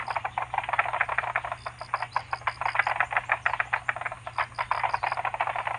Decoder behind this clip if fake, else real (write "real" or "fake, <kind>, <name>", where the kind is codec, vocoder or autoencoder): real